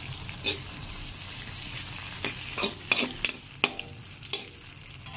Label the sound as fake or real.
real